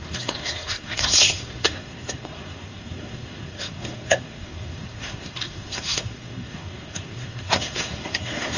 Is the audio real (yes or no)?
no